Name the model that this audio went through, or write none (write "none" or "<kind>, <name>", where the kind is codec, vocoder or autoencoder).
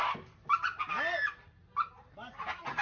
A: none